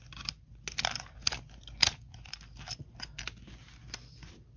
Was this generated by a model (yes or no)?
no